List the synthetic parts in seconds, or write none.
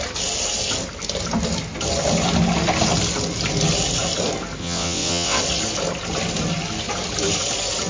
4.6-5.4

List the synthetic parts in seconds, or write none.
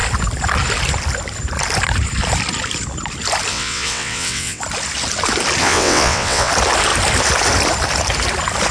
3.5-4.6; 5.6-6.5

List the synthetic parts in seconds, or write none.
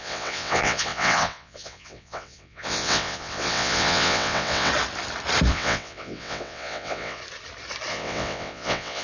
0.0-4.7; 5.5-7.2; 7.9-9.0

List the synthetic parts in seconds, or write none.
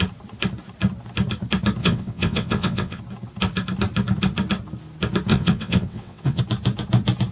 1.8-3.0; 5.3-6.4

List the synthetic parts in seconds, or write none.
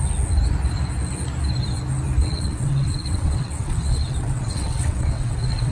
2.2-5.7